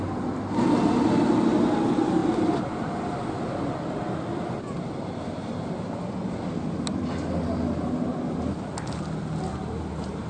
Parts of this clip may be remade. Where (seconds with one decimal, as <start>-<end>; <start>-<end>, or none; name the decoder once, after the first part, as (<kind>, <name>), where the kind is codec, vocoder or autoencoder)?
none